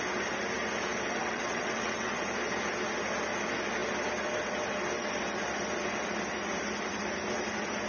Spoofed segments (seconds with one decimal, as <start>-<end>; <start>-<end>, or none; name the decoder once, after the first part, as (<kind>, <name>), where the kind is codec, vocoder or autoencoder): 1.2-2.1 (vocoder, WaveNeXt)